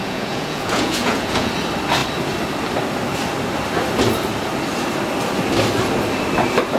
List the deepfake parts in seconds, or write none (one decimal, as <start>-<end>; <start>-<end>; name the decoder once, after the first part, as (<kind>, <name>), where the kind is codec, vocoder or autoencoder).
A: 0.0-1.5 (vocoder, Vocos)